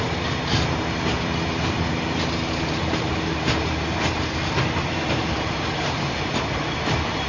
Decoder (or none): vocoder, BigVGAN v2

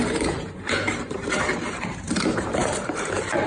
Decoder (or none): vocoder, BigVGAN v2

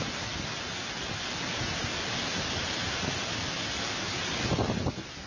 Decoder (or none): none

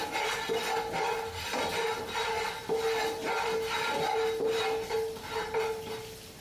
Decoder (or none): none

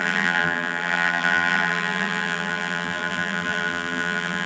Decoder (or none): vocoder, BigVGAN v2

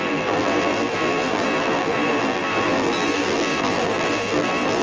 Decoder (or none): vocoder, BigVGAN v2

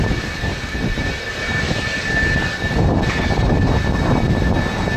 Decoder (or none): none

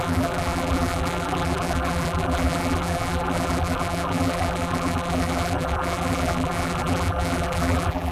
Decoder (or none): vocoder, BigVGAN v2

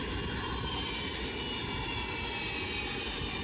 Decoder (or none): none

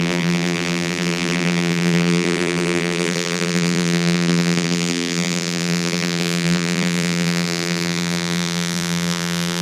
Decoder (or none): vocoder, BigVGAN v2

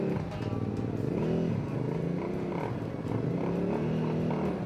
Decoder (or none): none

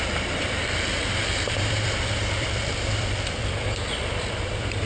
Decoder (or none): vocoder, BigVGAN v2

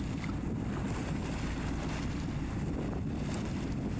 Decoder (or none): none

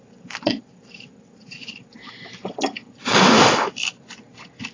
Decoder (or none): none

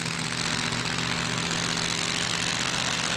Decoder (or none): none